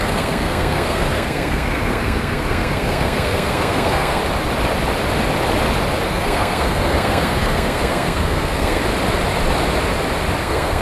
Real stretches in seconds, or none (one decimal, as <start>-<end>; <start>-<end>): 4.2-6.1; 8.8-10.4